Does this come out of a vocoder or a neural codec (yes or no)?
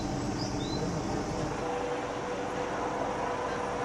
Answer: no